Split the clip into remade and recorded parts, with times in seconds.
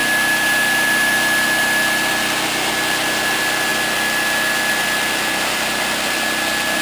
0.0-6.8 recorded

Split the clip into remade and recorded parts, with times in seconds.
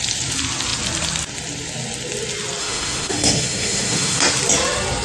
0.0-2.6 recorded; 2.6-4.2 remade; 4.2-5.0 recorded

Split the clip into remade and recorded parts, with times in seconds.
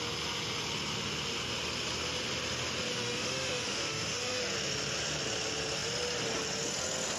0.0-2.9 recorded; 2.9-4.4 remade; 4.4-7.2 recorded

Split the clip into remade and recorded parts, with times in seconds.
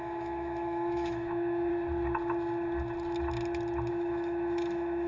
0.0-1.7 remade; 1.7-3.9 recorded; 3.9-5.1 remade